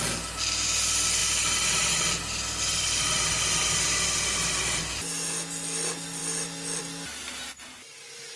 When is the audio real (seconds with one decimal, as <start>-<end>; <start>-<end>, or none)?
0.0-8.4